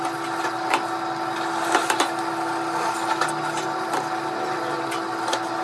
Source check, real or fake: real